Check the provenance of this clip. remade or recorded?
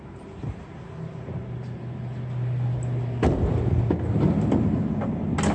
recorded